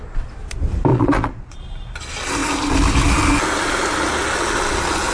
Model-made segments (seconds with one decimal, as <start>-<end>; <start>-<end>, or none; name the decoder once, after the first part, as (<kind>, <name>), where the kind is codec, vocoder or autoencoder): 0.9-1.6 (vocoder, Vocos)